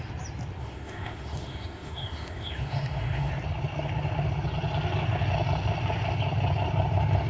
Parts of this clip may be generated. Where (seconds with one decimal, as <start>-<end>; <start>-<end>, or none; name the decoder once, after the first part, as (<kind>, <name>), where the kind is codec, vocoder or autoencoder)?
0.6-3.3 (autoencoder, DAC-VAE)